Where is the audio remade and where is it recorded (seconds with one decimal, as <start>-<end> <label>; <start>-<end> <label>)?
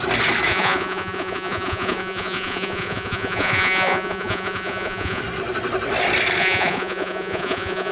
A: 0.0-0.5 recorded; 0.5-5.2 remade; 5.2-6.4 recorded; 6.4-7.9 remade